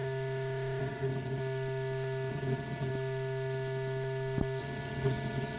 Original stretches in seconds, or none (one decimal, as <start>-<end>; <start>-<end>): 0.0-0.8; 1.4-2.3; 2.9-4.6